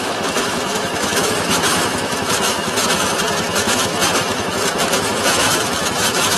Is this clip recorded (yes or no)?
no